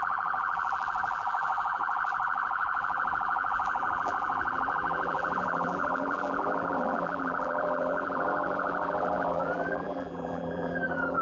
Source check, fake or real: fake